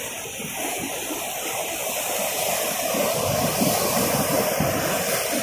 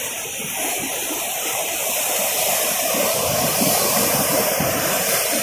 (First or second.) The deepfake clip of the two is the second